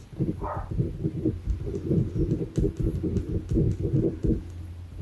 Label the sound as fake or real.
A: real